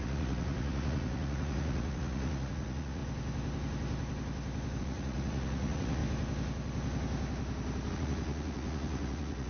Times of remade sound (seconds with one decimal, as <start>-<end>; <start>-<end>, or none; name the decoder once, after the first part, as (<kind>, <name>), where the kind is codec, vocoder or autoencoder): 0.0-3.0 (vocoder, Vocos); 4.8-6.0; 7.9-9.5